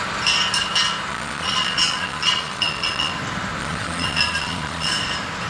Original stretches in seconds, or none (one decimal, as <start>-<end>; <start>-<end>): 0.0-1.1; 3.1-3.6; 4.9-5.5